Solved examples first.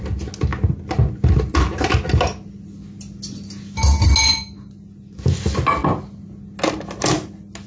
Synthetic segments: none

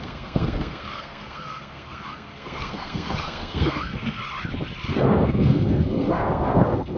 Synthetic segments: 0.0-4.2 (codec, SNAC); 4.9-7.0

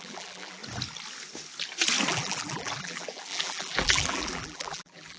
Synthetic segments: 0.0-0.6 (vocoder, BigVGAN v2); 2.1-5.2

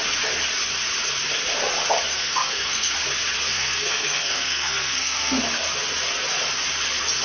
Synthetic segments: 2.1-2.9 (codec, SNAC); 3.5-5.4

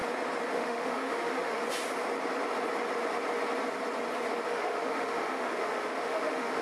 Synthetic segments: 0.5-1.6 (autoencoder, DAC-VAE); 4.5-6.6